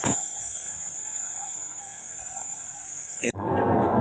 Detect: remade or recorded remade